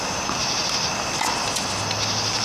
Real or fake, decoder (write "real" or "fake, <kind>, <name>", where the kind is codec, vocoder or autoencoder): real